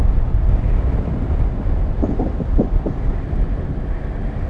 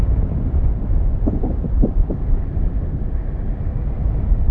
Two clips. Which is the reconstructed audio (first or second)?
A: second